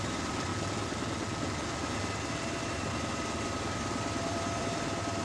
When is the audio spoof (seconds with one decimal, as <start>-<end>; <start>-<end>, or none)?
0.0-0.5; 2.4-5.2